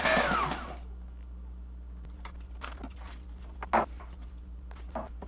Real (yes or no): yes